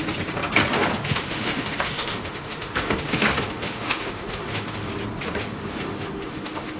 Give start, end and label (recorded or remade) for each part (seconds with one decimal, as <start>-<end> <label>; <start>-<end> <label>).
0.0-0.9 recorded; 0.9-4.9 remade; 4.9-5.4 recorded; 5.4-6.8 remade